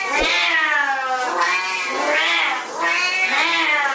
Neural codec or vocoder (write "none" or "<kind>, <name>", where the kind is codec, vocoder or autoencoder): none